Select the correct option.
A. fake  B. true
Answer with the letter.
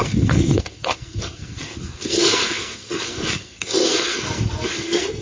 A